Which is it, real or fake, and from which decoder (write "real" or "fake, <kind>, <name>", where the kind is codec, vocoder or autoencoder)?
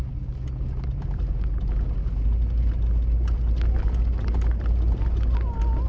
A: real